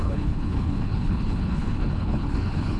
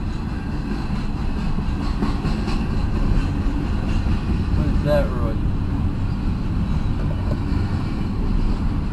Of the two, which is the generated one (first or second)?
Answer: first